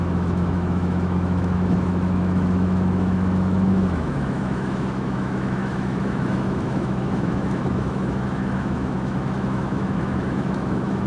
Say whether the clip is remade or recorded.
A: remade